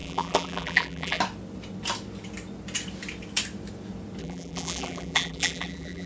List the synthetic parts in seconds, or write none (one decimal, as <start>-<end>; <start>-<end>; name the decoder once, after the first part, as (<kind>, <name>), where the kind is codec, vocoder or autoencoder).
0.0-1.2 (vocoder, BigVGAN v2); 4.2-6.1

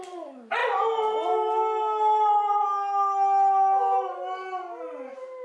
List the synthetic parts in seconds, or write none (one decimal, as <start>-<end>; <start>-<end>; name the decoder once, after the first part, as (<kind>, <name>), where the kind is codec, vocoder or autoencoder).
none